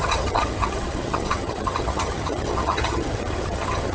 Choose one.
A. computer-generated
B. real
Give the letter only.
A